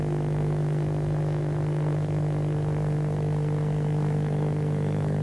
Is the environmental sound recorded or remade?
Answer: remade